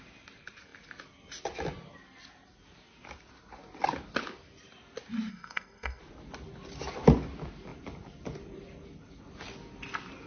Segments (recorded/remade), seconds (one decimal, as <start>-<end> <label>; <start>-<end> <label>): 0.0-5.3 recorded; 5.3-6.0 remade; 6.0-10.3 recorded